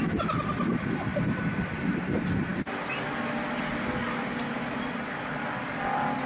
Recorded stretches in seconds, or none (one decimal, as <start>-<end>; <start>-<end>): 0.0-6.3

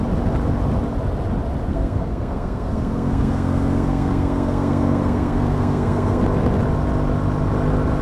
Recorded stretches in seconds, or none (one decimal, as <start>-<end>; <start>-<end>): 0.0-1.7; 6.2-8.0

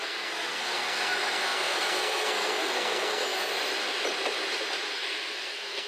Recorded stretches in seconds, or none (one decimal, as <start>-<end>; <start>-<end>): 3.5-4.9

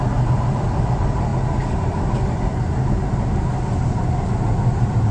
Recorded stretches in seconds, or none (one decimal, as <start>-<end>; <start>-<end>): 0.0-5.1

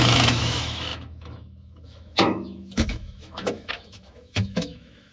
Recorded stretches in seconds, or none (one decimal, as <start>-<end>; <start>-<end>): none

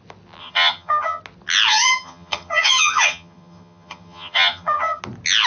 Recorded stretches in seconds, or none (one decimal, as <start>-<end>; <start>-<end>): 0.0-0.4; 1.2-1.7; 5.0-5.5